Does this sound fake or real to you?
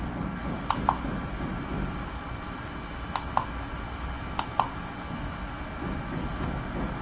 fake